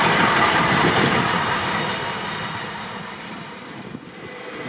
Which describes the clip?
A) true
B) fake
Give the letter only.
B